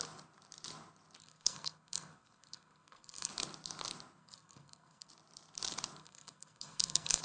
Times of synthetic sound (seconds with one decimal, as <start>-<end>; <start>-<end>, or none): 1.2-3.3; 4.2-5.1; 6.0-7.2